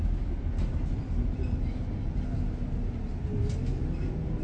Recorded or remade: recorded